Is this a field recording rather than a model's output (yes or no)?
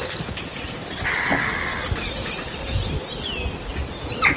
yes